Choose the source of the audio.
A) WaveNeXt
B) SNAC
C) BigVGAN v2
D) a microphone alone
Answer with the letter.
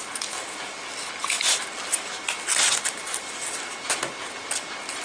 D